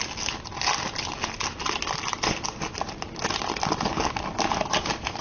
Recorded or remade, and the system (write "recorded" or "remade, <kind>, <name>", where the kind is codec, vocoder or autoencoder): recorded